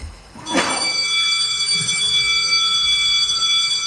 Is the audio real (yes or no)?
no